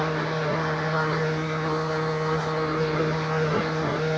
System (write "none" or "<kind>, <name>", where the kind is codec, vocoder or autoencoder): codec, SNAC